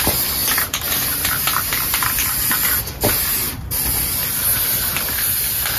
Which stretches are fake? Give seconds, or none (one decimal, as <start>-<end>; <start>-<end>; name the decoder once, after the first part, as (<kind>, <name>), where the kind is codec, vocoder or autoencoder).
0.0-5.8 (vocoder, BigVGAN v2)